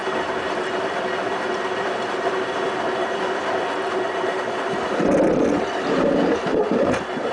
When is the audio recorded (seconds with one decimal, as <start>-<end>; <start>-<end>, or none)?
0.0-7.3